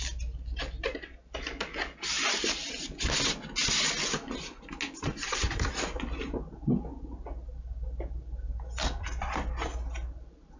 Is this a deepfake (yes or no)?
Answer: no